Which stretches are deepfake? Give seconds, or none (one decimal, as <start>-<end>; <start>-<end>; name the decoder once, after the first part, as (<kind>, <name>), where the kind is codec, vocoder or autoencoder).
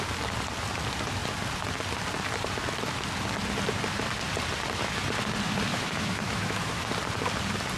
5.7-6.9 (autoencoder, DAC-VAE)